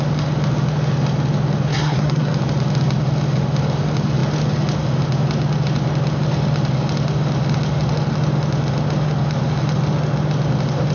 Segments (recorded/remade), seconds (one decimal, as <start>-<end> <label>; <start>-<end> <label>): 0.0-1.7 recorded; 1.7-2.3 remade; 2.3-10.9 recorded

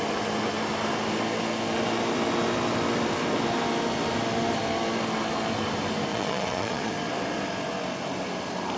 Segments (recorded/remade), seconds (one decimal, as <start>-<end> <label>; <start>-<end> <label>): 0.0-6.1 recorded; 6.1-6.9 remade; 6.9-8.8 recorded